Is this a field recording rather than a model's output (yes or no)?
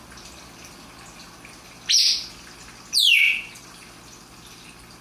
yes